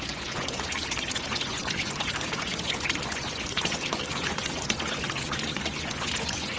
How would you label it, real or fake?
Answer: fake